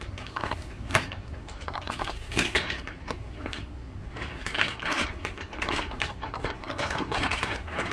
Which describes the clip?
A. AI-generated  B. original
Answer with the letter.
A